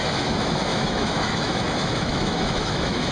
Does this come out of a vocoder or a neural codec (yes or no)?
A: yes